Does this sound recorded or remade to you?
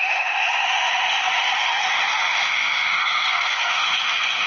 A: remade